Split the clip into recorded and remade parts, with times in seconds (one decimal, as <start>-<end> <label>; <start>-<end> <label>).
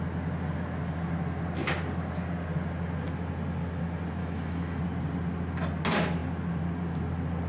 0.0-4.2 recorded; 4.2-4.8 remade; 4.8-7.5 recorded